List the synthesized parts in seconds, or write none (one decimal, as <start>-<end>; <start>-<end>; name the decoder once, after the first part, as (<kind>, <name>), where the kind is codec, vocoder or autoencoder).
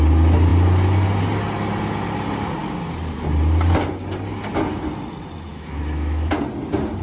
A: 5.5-6.3 (autoencoder, DAC-VAE)